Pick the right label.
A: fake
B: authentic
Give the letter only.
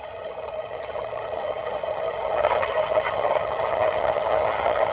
A